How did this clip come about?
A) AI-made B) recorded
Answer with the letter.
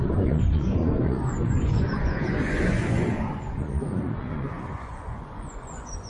A